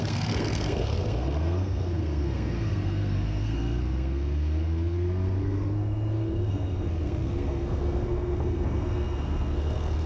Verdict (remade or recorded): remade